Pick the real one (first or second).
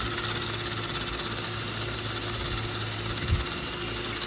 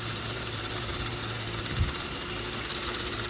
first